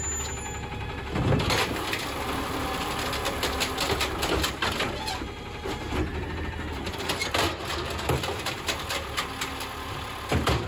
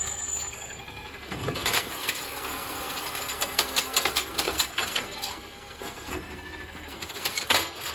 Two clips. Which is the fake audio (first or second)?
second